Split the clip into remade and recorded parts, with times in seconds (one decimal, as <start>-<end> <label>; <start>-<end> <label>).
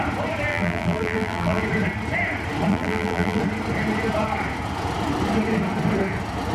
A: 0.0-0.5 recorded; 0.5-1.6 remade; 1.6-2.7 recorded; 2.7-3.4 remade; 3.4-6.5 recorded